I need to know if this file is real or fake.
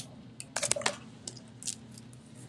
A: real